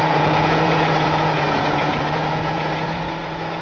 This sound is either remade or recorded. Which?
remade